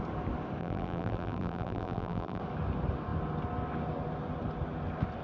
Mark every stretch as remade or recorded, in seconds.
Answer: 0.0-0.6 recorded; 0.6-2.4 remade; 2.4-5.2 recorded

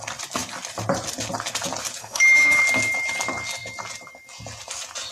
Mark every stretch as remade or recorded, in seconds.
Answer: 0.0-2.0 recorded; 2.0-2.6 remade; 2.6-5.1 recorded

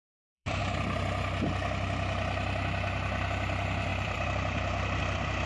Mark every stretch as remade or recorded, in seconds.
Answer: 0.0-0.6 remade; 0.6-3.9 recorded; 3.9-5.0 remade; 5.0-5.5 recorded

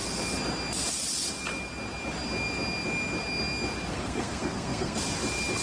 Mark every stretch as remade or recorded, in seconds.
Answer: 0.0-3.9 recorded; 3.9-5.0 remade; 5.0-5.6 recorded

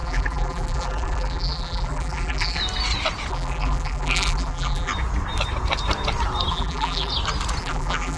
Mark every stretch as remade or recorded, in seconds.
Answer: 0.0-2.6 remade; 2.6-3.3 recorded; 3.3-4.9 remade; 4.9-6.5 recorded; 6.5-7.1 remade; 7.1-7.6 recorded; 7.6-8.2 remade